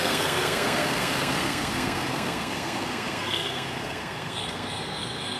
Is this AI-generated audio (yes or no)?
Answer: yes